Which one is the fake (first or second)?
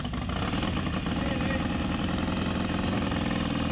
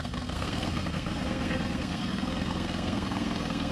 second